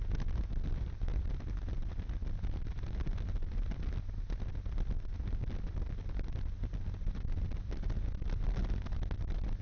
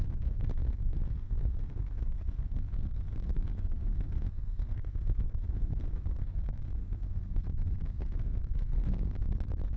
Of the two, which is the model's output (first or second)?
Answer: second